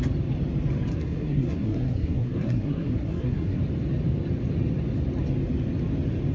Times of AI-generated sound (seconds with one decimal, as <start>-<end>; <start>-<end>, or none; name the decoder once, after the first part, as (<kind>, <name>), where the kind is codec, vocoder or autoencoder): 0.9-3.6 (codec, SNAC)